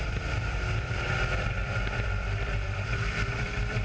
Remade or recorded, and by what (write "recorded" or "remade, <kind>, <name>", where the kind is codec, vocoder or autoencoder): remade, vocoder, BigVGAN v2